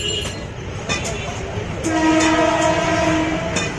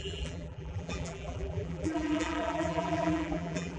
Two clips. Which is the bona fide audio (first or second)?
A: first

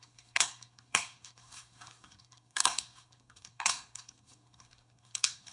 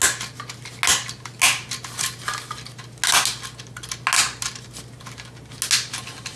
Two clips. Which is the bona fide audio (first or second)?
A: second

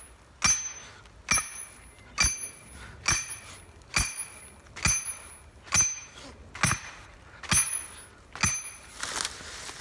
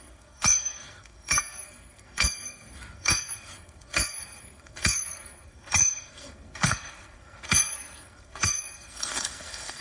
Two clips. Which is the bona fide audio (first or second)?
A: first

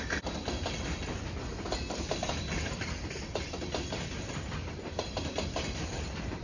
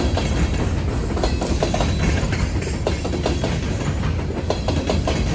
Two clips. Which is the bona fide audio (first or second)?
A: second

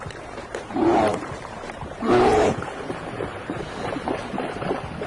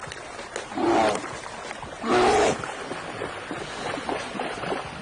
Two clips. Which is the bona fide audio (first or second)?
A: second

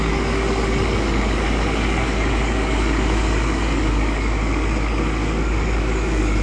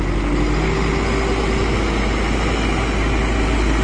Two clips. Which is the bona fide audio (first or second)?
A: second